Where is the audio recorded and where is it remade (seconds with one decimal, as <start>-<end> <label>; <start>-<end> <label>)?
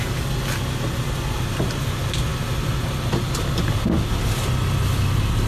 0.0-5.5 recorded